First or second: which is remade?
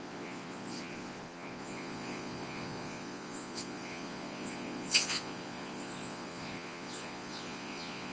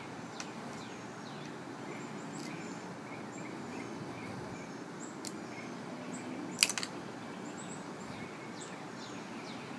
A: first